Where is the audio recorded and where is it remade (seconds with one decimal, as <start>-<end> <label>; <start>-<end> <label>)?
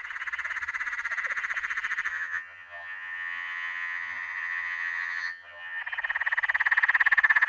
0.0-2.1 recorded; 2.1-5.8 remade; 5.8-7.5 recorded